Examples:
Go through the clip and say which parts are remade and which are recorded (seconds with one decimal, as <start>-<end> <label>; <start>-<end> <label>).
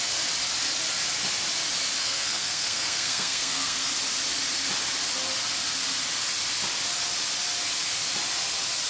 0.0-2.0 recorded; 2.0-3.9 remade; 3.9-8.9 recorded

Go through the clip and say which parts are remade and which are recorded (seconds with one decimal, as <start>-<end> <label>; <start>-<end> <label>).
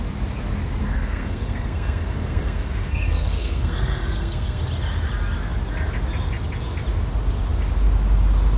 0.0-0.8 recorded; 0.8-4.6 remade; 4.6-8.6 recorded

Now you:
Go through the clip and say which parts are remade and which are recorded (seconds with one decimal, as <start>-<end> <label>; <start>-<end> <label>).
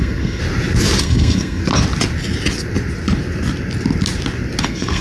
0.0-0.4 remade; 0.4-1.0 recorded; 1.0-1.6 remade; 1.6-4.6 recorded; 4.6-5.0 remade